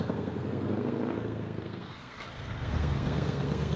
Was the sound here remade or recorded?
remade